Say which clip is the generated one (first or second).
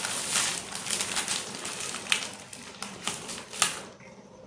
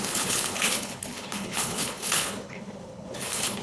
second